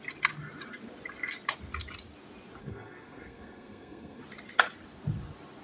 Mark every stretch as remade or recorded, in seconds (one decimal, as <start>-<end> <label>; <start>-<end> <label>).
0.0-2.6 recorded; 2.6-4.2 remade; 4.2-5.6 recorded